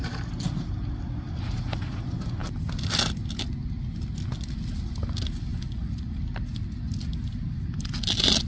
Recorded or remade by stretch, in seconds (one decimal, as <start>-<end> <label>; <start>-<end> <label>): 0.0-8.5 recorded